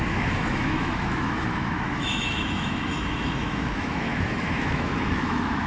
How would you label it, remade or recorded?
remade